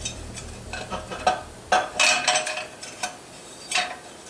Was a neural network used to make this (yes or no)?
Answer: no